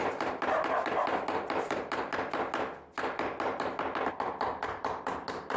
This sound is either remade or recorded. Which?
recorded